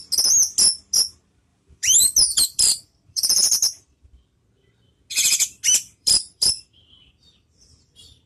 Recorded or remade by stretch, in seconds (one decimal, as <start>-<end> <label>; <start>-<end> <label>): 0.0-1.5 recorded; 1.5-4.3 remade; 4.3-5.7 recorded; 5.7-7.1 remade; 7.1-8.3 recorded